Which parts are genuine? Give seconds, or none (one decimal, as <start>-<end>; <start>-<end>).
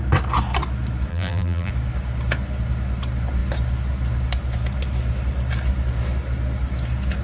0.0-1.1; 1.7-7.2